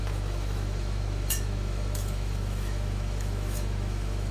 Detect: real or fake fake